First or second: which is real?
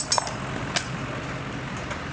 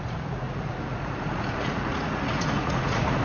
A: first